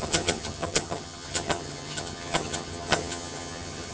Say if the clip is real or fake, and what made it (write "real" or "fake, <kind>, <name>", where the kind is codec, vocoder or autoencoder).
fake, vocoder, HiFi-GAN